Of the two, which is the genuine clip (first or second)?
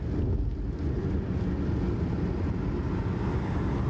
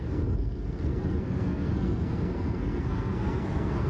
first